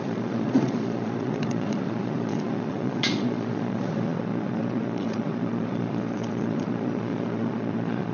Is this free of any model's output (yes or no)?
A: no